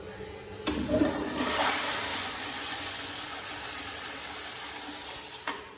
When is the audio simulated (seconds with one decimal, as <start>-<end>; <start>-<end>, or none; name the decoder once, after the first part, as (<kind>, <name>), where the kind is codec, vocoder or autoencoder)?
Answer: 2.1-3.4 (vocoder, Vocos)